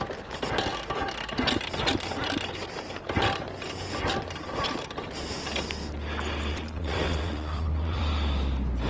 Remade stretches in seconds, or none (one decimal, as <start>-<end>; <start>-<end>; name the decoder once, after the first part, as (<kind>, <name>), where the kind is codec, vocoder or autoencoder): 6.5-8.0 (vocoder, WaveNeXt)